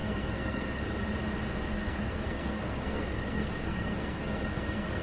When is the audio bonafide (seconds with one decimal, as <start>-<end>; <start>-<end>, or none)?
0.8-1.7